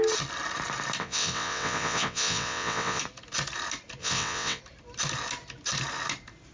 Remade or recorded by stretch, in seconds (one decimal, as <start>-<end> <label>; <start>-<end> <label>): 0.0-1.0 recorded; 1.0-3.0 remade; 3.0-4.0 recorded; 4.0-4.6 remade; 4.6-6.5 recorded